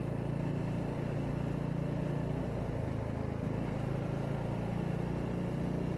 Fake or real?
real